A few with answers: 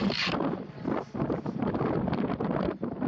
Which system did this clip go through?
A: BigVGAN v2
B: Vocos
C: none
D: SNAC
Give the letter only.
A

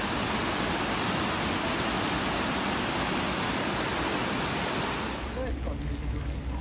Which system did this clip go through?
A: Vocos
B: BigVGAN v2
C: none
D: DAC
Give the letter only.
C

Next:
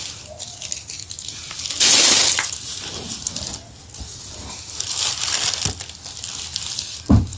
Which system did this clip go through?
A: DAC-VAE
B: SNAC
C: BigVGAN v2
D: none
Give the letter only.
D